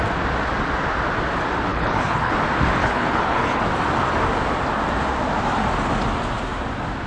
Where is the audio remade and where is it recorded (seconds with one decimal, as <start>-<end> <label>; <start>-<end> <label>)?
0.0-1.7 recorded; 1.7-2.3 remade; 2.3-2.8 recorded; 2.8-3.6 remade; 3.6-7.1 recorded